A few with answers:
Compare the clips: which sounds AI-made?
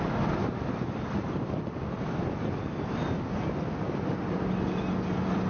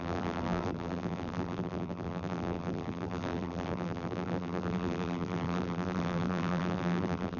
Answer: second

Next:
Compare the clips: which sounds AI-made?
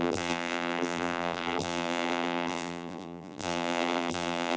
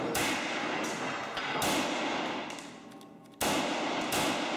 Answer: first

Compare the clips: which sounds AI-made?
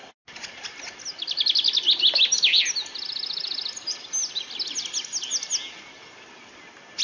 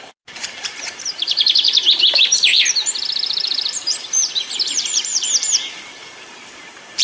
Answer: second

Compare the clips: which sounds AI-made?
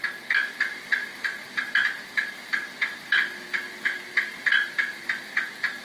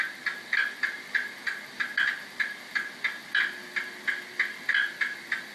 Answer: first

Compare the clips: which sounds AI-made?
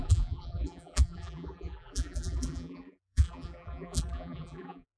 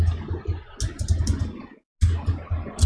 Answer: first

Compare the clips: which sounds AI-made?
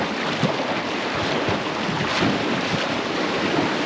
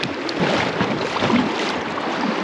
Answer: second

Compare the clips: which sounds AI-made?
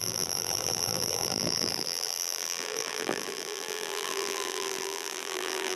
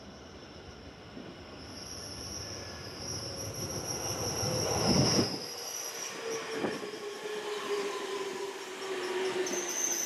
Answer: first